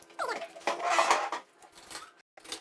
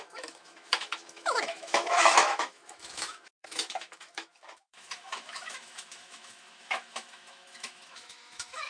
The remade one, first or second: second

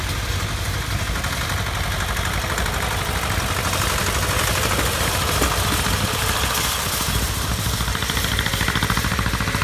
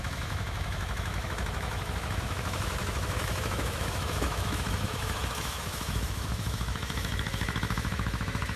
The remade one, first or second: second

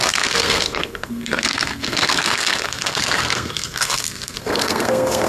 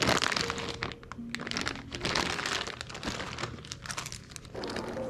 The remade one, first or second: first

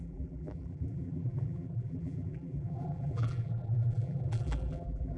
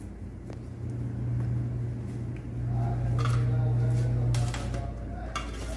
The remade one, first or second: first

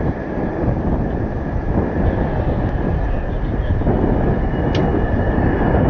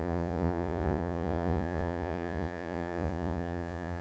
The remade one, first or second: second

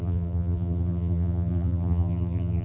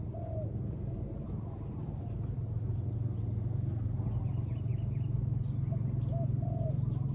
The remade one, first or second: first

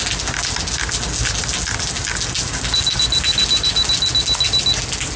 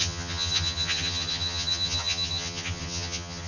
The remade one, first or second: second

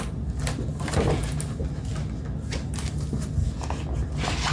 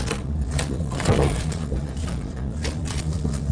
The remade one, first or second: second